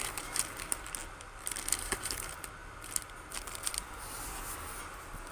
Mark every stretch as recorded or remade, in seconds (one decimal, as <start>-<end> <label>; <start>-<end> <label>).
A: 0.0-5.3 recorded